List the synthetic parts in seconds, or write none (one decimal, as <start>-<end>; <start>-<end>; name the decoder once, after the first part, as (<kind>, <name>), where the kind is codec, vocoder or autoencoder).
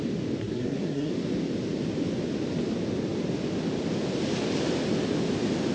0.4-1.1 (codec, SNAC)